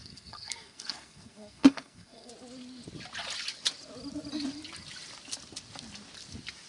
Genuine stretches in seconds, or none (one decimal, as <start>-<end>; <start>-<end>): 2.3-6.7

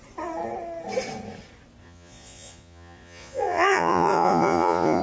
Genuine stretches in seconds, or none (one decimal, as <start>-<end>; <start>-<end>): 0.0-1.8

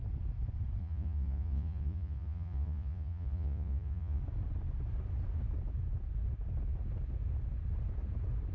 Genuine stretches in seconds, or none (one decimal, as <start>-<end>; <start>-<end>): 0.0-0.8; 4.2-8.5

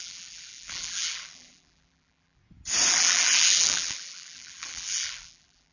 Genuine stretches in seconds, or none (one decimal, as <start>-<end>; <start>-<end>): 2.4-2.9

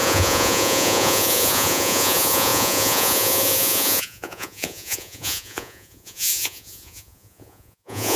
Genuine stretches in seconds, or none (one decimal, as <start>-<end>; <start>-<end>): none

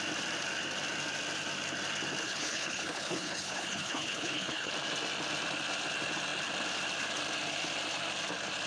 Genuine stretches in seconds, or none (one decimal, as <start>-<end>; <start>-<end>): 0.0-2.2; 4.7-8.7

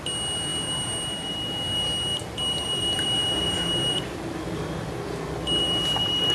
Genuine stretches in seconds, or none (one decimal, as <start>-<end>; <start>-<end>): 0.0-0.5; 1.3-2.1